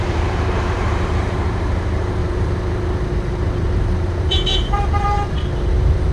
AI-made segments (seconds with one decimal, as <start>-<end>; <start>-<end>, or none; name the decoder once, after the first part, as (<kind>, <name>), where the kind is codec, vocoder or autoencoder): 0.0-2.2 (vocoder, BigVGAN v2); 3.1-6.1